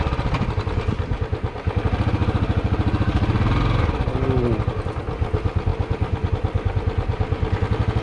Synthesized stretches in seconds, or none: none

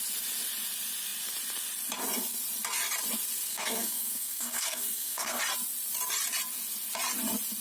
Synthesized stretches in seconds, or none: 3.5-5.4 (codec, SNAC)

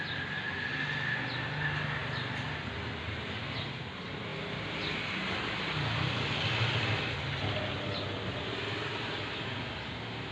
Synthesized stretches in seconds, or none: none